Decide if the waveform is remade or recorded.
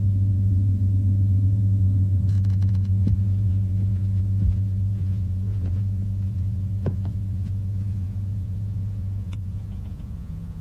remade